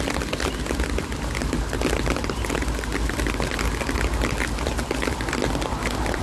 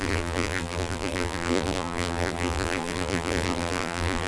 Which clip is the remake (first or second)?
second